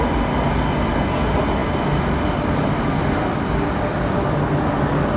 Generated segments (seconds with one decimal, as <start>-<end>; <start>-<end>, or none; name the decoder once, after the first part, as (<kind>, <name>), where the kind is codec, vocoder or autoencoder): none